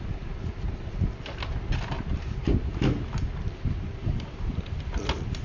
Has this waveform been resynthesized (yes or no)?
no